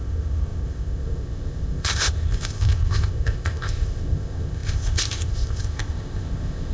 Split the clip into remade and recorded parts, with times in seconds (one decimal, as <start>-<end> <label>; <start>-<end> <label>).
0.0-6.7 remade